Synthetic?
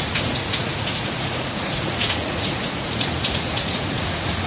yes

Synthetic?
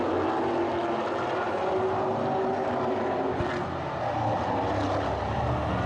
no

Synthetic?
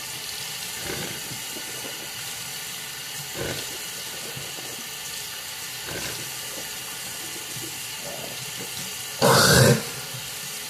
yes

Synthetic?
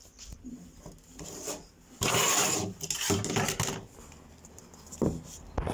no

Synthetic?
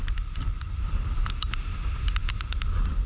no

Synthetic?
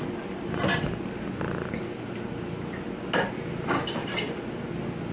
no